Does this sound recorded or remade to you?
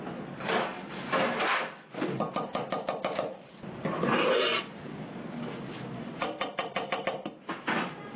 recorded